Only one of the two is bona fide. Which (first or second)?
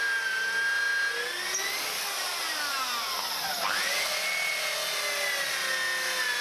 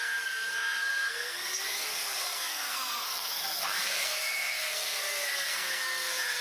first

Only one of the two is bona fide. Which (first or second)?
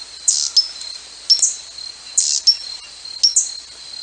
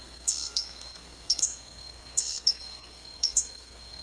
first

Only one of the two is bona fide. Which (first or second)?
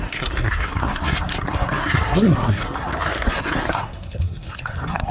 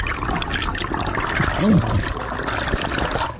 second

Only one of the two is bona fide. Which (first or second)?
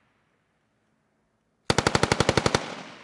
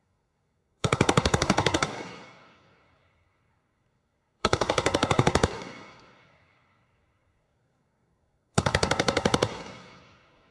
first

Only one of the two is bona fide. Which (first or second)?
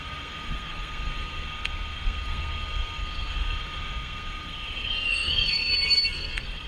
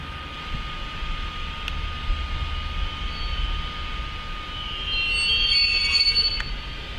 second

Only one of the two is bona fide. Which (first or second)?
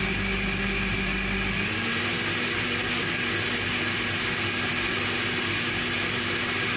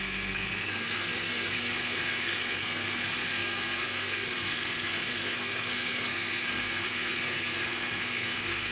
first